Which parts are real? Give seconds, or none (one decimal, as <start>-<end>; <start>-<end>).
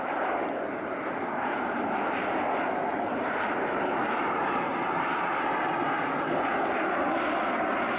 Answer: 0.0-2.9; 5.8-8.0